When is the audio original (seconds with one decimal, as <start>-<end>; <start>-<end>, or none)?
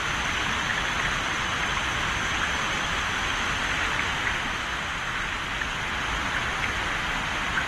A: 0.0-0.7; 1.4-7.7